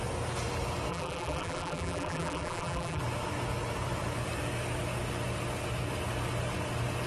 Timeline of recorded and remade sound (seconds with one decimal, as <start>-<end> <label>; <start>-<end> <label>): 0.0-0.9 recorded; 0.9-3.0 remade; 3.0-7.1 recorded